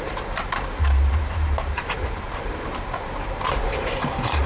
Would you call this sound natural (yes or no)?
no